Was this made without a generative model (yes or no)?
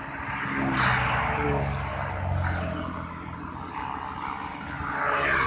yes